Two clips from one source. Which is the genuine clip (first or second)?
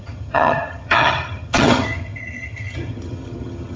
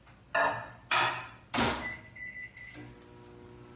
second